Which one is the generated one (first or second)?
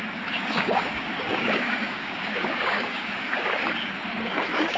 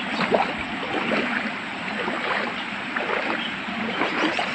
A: first